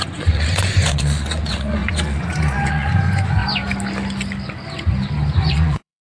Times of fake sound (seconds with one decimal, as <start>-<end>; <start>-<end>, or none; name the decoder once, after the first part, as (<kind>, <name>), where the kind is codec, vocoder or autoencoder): 0.0-3.4 (vocoder, Vocos); 5.5-6.0